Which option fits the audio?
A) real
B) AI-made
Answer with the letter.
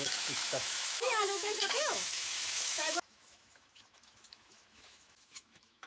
B